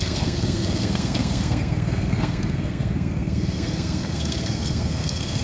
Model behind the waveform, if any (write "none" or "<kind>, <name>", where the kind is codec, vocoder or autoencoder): codec, SNAC